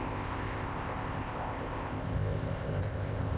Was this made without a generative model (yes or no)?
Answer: no